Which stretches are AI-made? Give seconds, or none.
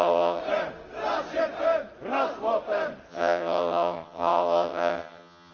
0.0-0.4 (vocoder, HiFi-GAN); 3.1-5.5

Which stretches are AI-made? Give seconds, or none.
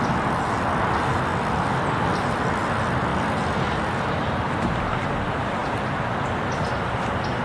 none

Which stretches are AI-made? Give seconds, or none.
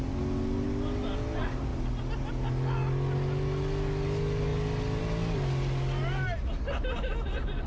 none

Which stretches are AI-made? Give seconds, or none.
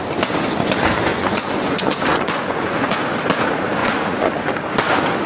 1.1-3.0 (vocoder, Vocos); 3.8-4.5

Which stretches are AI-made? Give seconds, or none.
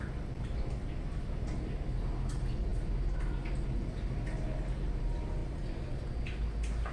none